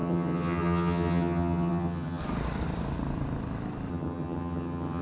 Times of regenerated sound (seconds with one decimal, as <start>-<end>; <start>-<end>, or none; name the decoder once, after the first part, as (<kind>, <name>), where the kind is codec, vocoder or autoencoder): 0.0-2.2 (vocoder, HiFi-GAN); 3.9-5.0